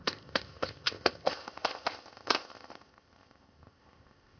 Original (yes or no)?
no